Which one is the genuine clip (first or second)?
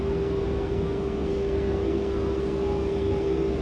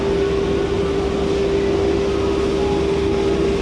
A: second